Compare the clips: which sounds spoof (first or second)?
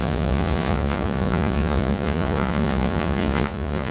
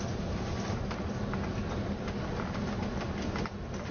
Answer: first